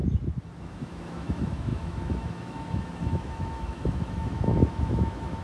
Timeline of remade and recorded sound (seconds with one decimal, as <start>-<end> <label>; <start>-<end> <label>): 0.0-0.6 recorded; 0.6-5.4 remade

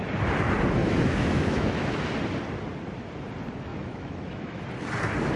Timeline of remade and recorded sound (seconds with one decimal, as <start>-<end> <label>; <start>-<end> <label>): 0.0-0.8 recorded; 0.8-2.0 remade; 2.0-3.7 recorded; 3.7-4.7 remade; 4.7-5.4 recorded

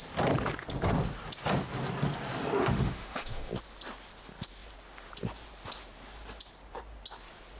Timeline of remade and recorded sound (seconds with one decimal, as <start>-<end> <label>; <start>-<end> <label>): 0.0-2.6 recorded; 2.6-3.5 remade; 3.5-7.6 recorded

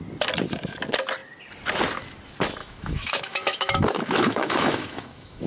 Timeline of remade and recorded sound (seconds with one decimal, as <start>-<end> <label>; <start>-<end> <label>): 0.0-2.6 recorded; 2.6-5.5 remade